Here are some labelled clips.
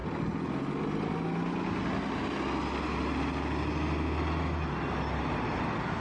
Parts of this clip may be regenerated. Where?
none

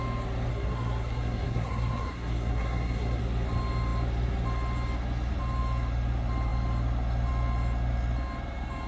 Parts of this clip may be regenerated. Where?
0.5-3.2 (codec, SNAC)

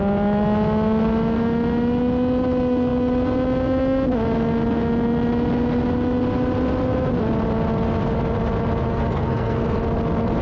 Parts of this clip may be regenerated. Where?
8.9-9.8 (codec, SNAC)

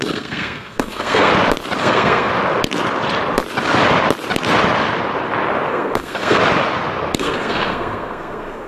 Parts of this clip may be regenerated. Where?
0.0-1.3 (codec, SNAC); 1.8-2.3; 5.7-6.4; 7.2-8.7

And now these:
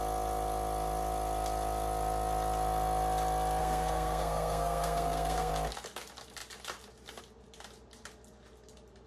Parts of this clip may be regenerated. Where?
3.6-5.5 (codec, SNAC)

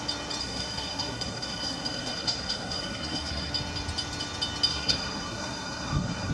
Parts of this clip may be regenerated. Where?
0.4-3.5 (codec, SNAC); 4.7-6.3